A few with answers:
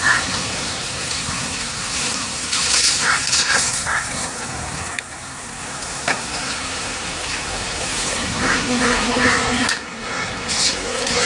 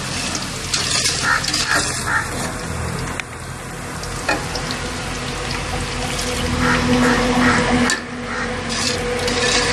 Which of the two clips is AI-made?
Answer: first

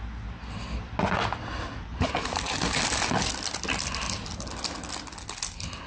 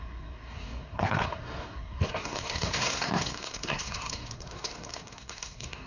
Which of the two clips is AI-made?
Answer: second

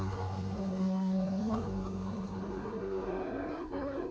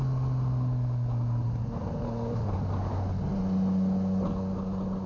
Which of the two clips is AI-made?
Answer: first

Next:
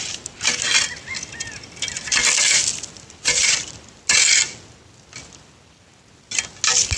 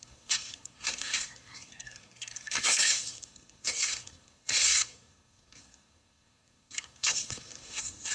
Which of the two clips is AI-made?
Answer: second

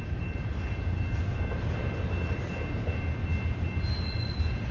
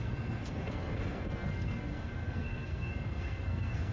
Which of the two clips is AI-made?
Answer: second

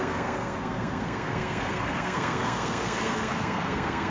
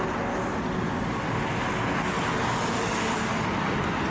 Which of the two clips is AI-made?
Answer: first